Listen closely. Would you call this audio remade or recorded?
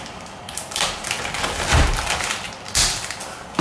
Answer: recorded